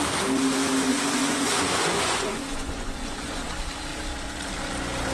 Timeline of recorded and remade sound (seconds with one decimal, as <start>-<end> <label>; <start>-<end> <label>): 0.0-0.9 recorded; 0.9-3.4 remade; 3.4-5.1 recorded

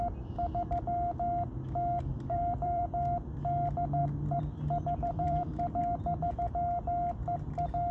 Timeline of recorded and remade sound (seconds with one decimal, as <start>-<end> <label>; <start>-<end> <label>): 0.0-2.1 recorded; 2.1-2.8 remade; 2.8-4.0 recorded; 4.0-5.8 remade; 5.8-7.9 recorded

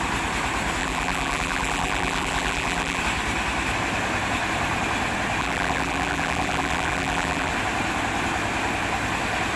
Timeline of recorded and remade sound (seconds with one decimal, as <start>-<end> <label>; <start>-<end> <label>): 0.0-0.8 recorded; 0.8-3.0 remade; 3.0-5.4 recorded; 5.4-7.5 remade; 7.5-9.6 recorded

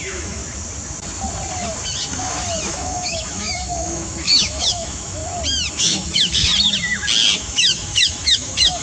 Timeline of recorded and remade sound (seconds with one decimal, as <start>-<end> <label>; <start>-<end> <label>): 0.0-0.4 remade; 0.4-2.7 recorded; 2.7-5.2 remade; 5.2-5.7 recorded; 5.7-6.5 remade; 6.5-7.4 recorded; 7.4-8.8 remade

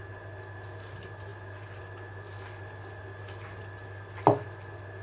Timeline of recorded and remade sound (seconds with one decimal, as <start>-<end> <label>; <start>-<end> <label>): 0.0-5.0 recorded

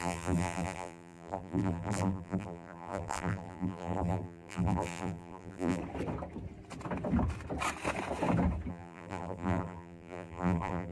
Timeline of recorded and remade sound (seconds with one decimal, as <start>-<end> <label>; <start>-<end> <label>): 0.0-5.8 remade; 5.8-8.7 recorded; 8.7-10.9 remade

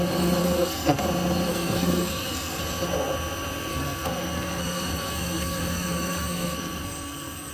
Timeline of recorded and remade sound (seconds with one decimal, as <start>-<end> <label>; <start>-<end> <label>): 0.0-0.4 recorded; 0.4-1.0 remade; 1.0-1.5 recorded; 1.5-2.6 remade; 2.6-3.7 recorded; 3.7-7.5 remade